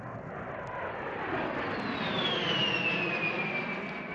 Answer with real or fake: real